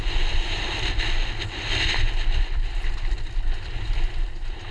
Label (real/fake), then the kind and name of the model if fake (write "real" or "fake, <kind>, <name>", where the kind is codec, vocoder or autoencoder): real